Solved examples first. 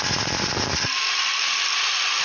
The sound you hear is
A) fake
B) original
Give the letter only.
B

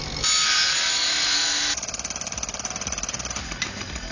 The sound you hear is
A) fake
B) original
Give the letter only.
B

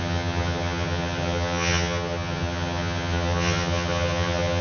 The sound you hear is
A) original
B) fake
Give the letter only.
B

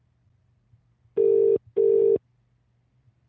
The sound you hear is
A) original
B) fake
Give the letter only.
A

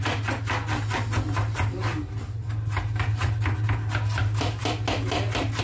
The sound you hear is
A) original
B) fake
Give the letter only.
A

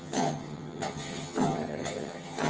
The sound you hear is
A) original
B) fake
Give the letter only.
B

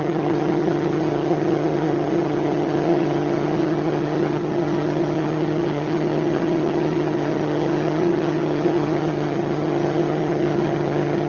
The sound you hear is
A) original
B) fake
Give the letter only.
B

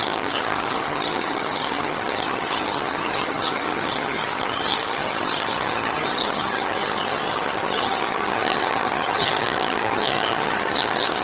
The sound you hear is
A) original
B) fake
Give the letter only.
B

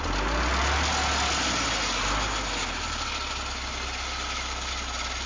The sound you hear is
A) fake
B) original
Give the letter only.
B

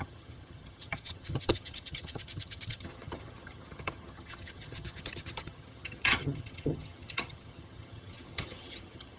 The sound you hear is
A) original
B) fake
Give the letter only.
B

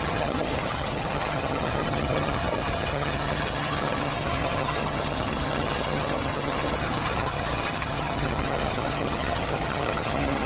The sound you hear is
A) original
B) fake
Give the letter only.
B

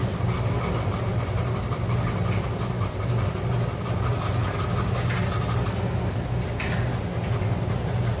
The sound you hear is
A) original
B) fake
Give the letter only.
A